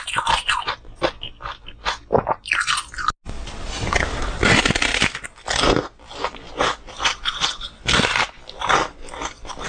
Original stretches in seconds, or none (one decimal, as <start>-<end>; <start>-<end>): 0.0-9.7